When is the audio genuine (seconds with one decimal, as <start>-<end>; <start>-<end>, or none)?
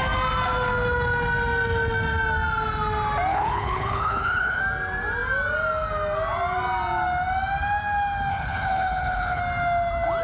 0.0-3.3; 4.6-8.3; 9.4-10.2